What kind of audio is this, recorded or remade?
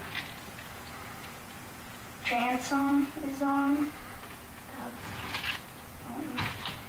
remade